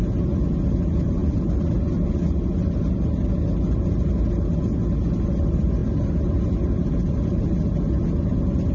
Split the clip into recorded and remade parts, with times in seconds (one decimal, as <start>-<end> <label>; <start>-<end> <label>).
0.0-8.7 recorded